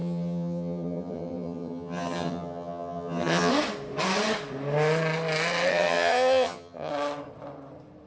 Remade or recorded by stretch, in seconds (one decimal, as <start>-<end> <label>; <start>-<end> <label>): 0.0-3.5 remade; 3.5-5.7 recorded; 5.7-6.9 remade; 6.9-8.1 recorded